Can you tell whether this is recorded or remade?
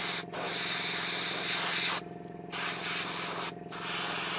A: recorded